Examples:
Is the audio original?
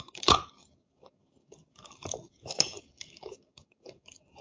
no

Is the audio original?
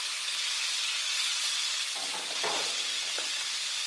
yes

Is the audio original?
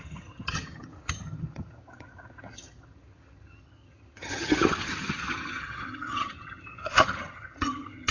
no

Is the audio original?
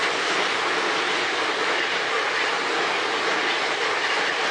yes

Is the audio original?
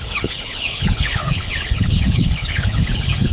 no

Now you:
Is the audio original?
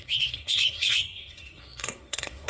no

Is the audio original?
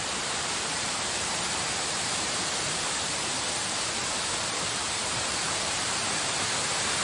no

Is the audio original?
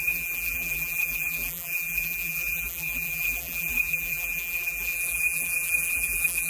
no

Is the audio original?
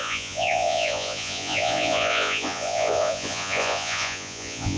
no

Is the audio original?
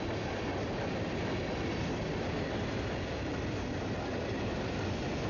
yes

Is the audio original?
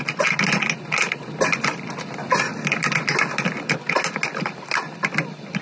yes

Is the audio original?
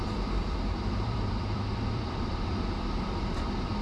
no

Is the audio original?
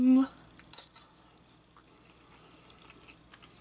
yes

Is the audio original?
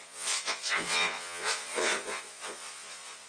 no